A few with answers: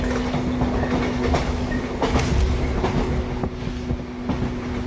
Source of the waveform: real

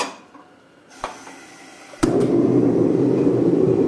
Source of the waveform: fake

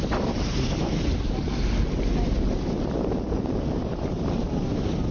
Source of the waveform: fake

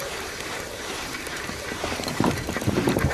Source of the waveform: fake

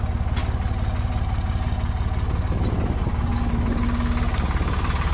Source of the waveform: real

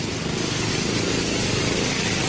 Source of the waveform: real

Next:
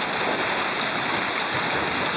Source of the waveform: real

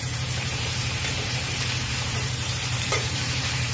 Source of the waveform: fake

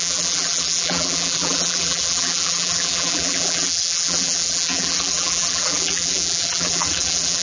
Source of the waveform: fake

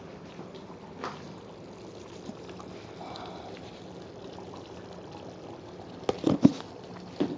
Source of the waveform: real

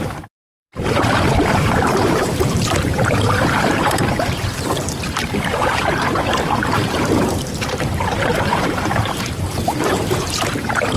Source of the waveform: fake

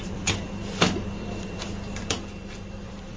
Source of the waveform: fake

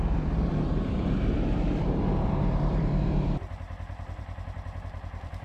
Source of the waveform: fake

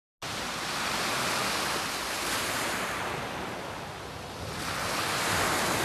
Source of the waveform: real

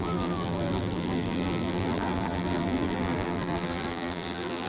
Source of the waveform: fake